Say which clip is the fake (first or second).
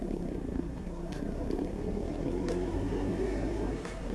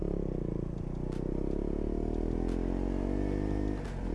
first